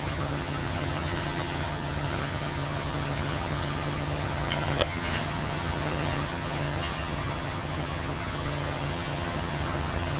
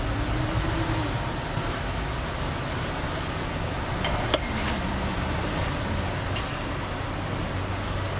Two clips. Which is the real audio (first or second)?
second